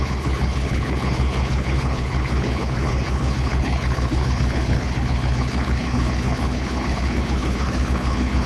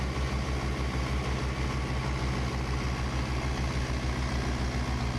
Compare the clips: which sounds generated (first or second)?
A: first